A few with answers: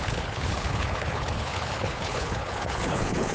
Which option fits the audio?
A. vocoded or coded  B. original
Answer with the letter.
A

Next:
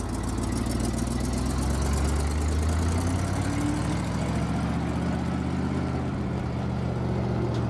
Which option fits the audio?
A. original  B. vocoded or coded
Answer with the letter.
A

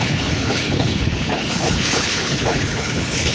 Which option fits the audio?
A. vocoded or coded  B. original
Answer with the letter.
A